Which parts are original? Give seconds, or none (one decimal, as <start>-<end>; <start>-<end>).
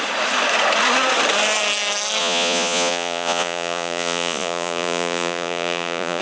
0.0-2.2